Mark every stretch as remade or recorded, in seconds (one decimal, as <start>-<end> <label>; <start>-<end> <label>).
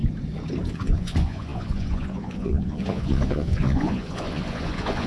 0.0-0.7 recorded; 0.7-5.1 remade